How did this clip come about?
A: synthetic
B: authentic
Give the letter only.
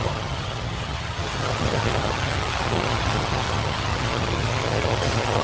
A